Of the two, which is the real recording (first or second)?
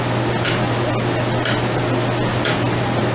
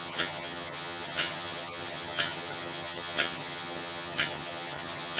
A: first